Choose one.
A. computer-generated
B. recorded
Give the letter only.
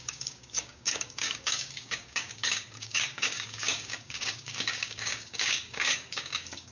A